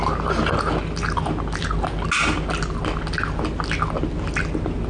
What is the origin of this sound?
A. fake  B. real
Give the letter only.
B